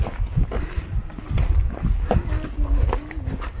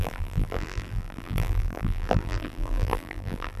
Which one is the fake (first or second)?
second